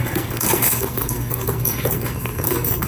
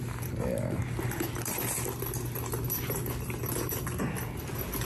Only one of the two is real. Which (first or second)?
second